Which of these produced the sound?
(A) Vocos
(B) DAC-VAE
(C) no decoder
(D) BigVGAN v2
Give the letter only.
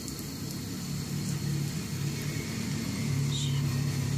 C